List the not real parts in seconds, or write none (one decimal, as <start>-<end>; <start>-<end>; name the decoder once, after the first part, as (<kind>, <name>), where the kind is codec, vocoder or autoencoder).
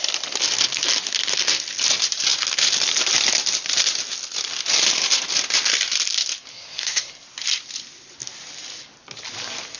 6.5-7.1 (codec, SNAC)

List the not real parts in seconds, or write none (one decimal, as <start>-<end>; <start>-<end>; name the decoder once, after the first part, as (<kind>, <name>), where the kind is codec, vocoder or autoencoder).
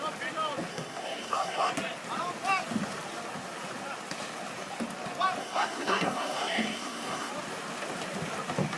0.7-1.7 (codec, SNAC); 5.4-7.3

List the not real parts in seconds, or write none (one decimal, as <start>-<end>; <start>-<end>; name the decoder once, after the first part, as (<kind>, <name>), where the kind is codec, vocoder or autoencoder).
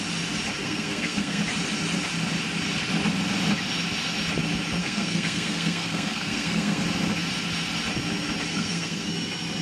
0.6-1.4 (codec, SNAC); 4.8-6.8; 8.5-9.1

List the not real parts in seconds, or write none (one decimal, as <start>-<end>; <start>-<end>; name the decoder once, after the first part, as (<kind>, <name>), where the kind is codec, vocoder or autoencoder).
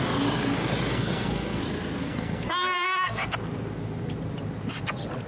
0.9-1.6 (codec, SNAC); 2.0-3.3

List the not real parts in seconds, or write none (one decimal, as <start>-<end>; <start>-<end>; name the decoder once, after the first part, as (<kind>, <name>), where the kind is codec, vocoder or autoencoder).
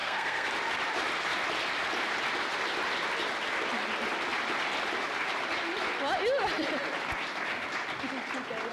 0.0-0.5 (codec, SNAC)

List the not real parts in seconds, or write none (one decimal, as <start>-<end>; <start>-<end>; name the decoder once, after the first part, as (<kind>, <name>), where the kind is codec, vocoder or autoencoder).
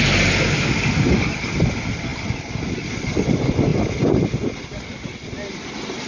none